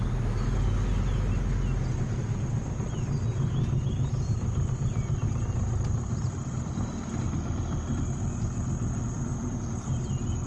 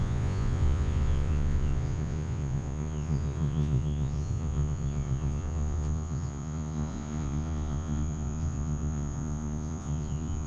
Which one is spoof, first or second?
second